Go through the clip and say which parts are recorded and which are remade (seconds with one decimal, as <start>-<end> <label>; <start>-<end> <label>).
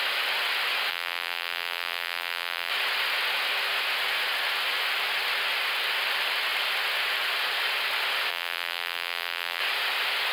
0.0-0.9 recorded; 0.9-2.7 remade; 2.7-8.3 recorded; 8.3-9.6 remade; 9.6-10.3 recorded